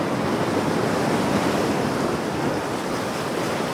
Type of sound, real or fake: real